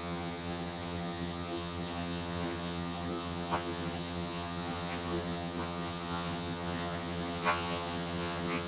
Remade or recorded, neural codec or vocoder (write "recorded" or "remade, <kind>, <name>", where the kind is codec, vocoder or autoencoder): remade, vocoder, HiFi-GAN